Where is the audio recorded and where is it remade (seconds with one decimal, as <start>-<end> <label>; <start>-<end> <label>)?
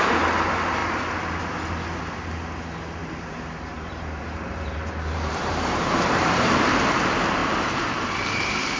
0.0-3.0 recorded; 3.0-6.6 remade; 6.6-7.4 recorded; 7.4-8.8 remade